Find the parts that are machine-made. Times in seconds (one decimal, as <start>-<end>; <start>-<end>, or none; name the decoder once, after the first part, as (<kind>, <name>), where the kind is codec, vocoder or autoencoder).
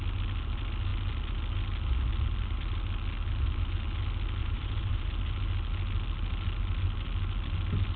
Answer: 4.4-5.1 (vocoder, BigVGAN v2)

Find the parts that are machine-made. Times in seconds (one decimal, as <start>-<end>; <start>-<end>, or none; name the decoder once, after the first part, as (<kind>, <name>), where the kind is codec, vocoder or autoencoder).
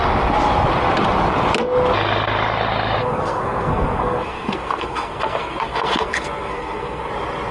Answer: 3.0-7.1 (codec, SNAC)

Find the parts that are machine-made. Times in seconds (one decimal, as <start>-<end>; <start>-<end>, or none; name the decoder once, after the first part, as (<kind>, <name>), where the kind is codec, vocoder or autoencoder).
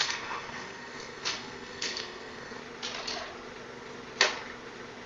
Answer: 0.0-2.6 (codec, SNAC)